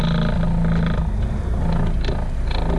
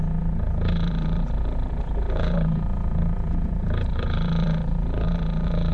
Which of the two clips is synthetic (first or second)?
second